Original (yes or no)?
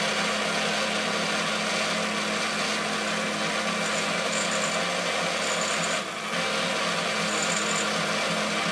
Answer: yes